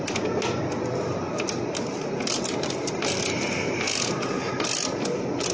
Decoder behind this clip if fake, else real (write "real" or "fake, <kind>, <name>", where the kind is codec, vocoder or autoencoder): real